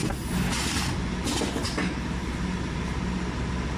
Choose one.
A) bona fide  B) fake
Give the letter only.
A